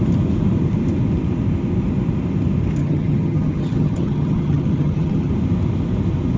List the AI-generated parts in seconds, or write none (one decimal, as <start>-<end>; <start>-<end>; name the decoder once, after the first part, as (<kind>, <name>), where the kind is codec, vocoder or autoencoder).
2.8-5.3 (vocoder, HiFi-GAN)